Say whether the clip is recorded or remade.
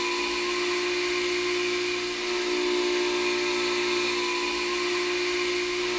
recorded